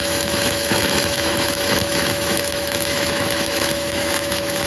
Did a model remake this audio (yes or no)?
yes